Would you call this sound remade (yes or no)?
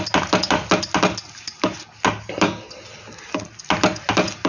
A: no